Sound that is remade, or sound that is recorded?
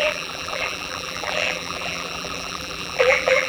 remade